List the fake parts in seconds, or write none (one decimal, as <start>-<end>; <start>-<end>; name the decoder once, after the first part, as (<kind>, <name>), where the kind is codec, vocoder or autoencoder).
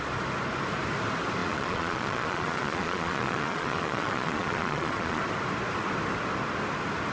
1.4-5.2 (vocoder, Vocos)